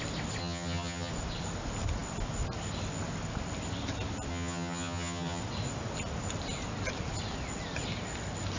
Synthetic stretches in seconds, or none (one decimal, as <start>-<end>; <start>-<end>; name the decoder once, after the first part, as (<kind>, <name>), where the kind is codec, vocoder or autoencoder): 0.4-1.1 (vocoder, HiFi-GAN); 4.3-5.4